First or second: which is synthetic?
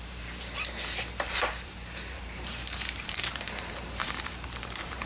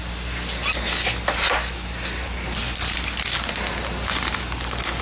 first